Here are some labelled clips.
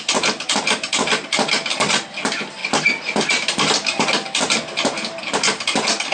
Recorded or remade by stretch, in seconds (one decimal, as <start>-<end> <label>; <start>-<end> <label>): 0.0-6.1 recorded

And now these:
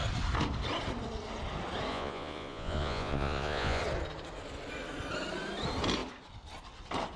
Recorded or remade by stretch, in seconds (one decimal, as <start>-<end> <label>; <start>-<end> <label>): 0.0-1.9 recorded; 1.9-3.8 remade; 3.8-7.2 recorded

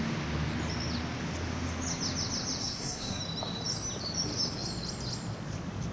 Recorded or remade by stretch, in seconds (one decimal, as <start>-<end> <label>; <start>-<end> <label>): 0.0-2.6 recorded; 2.6-3.2 remade; 3.2-5.9 recorded

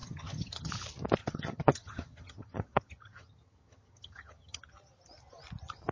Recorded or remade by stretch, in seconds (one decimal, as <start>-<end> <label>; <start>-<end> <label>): 0.0-0.7 remade; 0.7-1.2 recorded; 1.2-4.6 remade; 4.6-5.9 recorded

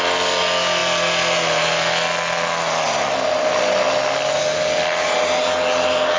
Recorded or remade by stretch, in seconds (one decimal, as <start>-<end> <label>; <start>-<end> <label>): 0.0-6.2 recorded

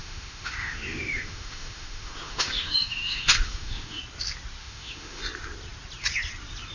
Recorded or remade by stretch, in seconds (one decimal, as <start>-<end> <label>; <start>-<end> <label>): 0.0-4.0 remade; 4.0-4.6 recorded; 4.6-5.2 remade; 5.2-6.7 recorded

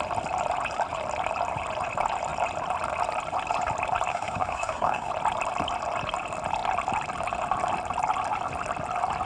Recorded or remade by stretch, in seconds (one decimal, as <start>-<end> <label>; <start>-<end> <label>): 0.0-4.1 recorded; 4.1-5.1 remade; 5.1-9.3 recorded